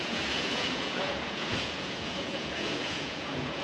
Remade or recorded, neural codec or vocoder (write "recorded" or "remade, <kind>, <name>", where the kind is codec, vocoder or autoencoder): remade, vocoder, Vocos